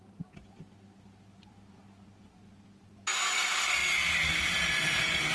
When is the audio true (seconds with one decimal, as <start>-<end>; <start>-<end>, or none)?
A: 0.0-5.3

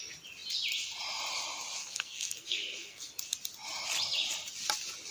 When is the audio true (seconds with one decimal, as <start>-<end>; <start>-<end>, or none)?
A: 0.0-1.8; 3.1-5.1

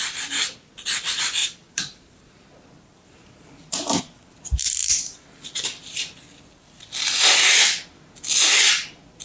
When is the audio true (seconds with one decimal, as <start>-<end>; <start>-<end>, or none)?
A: 0.0-1.4; 4.0-9.2

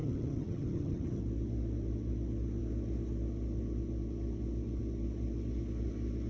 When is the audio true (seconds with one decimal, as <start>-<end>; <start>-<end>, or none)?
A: 1.2-6.3